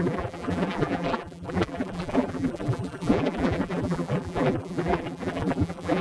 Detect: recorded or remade remade